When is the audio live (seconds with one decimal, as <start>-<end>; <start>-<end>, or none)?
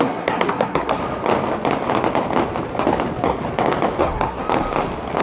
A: 1.0-4.0; 4.4-5.2